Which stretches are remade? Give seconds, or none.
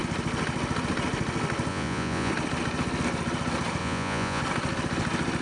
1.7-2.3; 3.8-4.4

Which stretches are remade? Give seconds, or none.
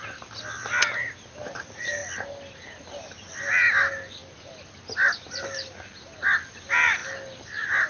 none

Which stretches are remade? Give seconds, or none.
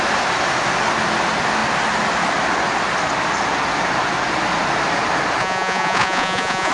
5.4-6.7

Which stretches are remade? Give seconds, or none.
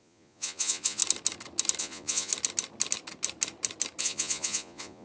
0.0-1.0; 1.8-2.3; 4.0-5.0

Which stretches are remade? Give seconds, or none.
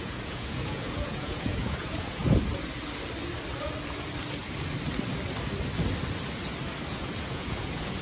0.0-2.2; 6.9-8.0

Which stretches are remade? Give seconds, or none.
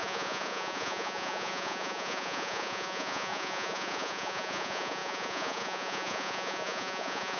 0.0-7.4